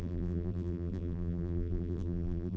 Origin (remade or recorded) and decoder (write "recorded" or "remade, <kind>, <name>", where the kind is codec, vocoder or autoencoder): remade, vocoder, BigVGAN v2